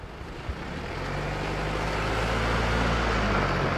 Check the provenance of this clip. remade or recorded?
recorded